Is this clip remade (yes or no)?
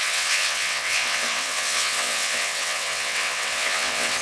yes